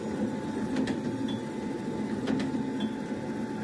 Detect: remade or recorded recorded